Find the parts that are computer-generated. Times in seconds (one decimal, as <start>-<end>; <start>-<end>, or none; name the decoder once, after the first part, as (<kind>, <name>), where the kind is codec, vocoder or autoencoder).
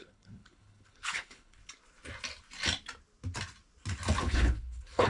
0.0-1.6 (codec, HILCodec); 4.2-5.1